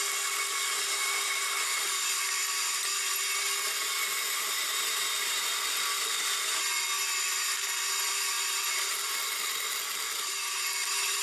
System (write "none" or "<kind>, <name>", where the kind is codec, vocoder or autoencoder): none